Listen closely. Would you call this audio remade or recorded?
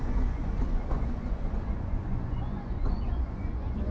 remade